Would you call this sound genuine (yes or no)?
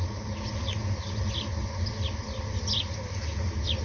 yes